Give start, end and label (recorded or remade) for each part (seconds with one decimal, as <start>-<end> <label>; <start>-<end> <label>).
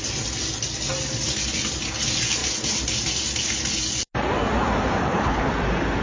0.0-5.0 recorded; 5.0-5.5 remade; 5.5-6.0 recorded